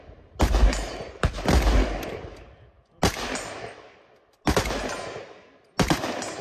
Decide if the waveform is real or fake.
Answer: real